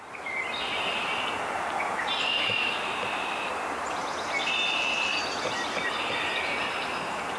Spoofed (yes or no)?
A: yes